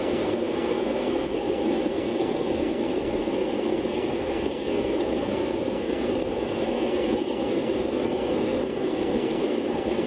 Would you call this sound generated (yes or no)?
yes